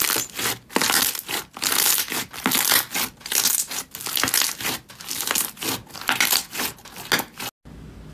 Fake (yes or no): no